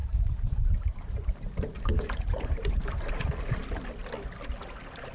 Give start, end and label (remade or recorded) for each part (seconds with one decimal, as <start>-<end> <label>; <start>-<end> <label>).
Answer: 0.0-3.1 remade; 3.1-5.1 recorded